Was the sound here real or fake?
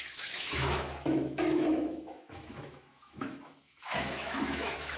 fake